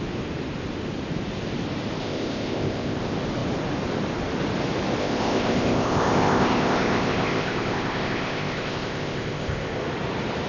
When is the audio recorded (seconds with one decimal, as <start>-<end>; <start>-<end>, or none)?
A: 0.0-2.0; 3.0-5.0; 9.8-10.5

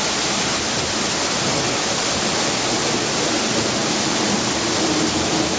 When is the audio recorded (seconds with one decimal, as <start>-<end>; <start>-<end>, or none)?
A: 0.0-5.6

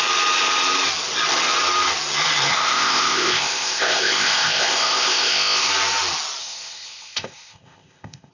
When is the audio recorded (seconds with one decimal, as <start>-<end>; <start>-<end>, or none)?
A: 0.0-2.5; 5.7-6.4

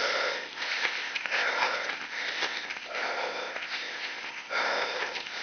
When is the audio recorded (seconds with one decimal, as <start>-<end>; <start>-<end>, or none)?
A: none